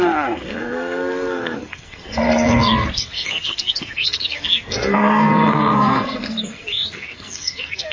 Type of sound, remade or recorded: remade